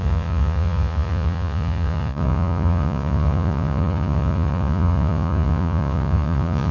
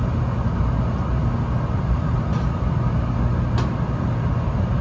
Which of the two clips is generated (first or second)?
first